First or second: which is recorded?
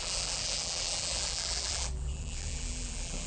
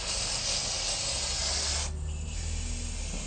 second